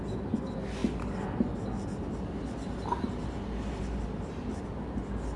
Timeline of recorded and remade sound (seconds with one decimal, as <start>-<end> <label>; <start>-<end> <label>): 0.0-5.4 recorded